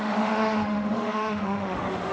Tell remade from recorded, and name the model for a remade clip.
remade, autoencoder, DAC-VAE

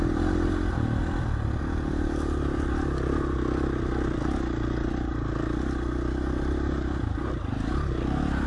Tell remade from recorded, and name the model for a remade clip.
recorded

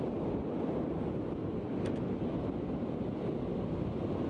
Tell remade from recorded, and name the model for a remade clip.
recorded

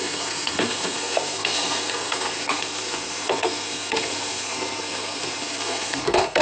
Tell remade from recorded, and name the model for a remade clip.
remade, codec, SNAC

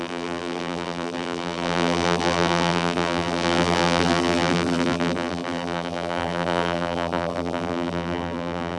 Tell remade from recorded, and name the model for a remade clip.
remade, vocoder, BigVGAN v2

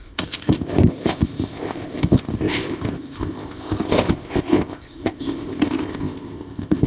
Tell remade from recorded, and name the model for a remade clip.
remade, codec, ZipCodec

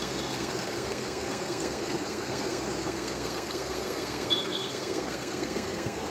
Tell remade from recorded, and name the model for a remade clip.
remade, codec, SNAC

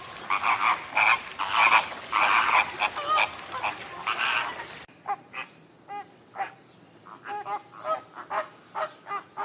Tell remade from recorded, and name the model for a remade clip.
recorded